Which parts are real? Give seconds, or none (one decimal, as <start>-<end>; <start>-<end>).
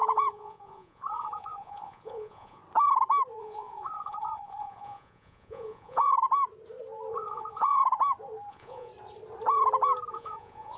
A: 2.6-3.4; 6.1-7.1; 7.8-8.5; 8.9-10.1